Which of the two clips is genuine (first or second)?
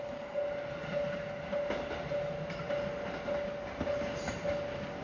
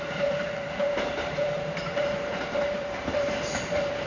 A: first